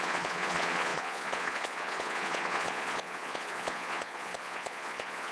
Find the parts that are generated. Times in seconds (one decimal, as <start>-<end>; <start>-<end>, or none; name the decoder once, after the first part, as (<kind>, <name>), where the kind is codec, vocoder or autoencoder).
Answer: 0.0-5.3 (vocoder, Vocos)